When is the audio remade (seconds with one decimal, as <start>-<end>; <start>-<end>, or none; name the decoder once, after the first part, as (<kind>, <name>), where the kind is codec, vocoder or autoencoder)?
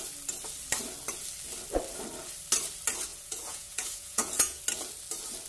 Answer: 3.1-4.6 (vocoder, Vocos)